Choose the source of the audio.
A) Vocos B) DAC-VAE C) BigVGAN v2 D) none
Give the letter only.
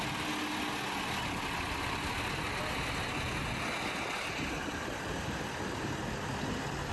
D